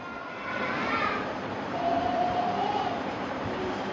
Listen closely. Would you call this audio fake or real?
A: fake